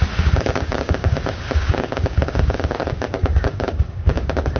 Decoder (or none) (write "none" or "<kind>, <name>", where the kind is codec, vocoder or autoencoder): codec, DAC